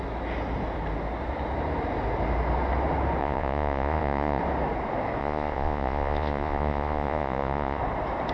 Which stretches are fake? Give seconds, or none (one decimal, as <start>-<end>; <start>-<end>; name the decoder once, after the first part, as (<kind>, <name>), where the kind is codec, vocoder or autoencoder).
3.2-4.4 (vocoder, Vocos); 5.2-7.8